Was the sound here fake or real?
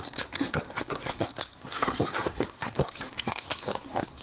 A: fake